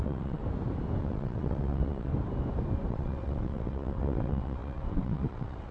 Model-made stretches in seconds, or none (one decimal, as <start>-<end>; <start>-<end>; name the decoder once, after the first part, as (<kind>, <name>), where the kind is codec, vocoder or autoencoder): 0.0-0.4 (vocoder, WaveNeXt); 1.0-2.1; 2.9-5.7

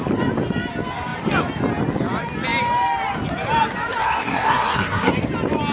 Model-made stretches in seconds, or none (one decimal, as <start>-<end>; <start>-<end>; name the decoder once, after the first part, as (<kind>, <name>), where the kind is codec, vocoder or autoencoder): 4.0-5.1 (codec, SNAC)

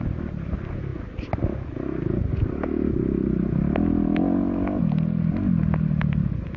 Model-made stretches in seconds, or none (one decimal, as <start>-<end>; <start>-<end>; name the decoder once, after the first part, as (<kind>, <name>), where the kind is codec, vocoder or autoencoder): none

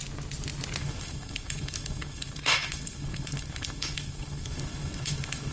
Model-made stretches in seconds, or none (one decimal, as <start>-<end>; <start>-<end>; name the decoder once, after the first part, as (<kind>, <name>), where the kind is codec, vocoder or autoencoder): 0.8-5.5 (autoencoder, DAC-VAE)

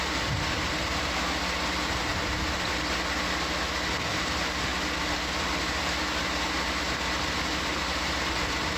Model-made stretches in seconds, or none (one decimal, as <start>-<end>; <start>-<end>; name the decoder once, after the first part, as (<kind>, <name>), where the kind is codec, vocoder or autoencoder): none